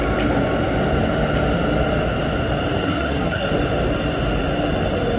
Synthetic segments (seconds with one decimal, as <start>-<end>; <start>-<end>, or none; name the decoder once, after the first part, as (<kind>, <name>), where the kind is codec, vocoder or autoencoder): 2.8-3.5 (codec, SNAC)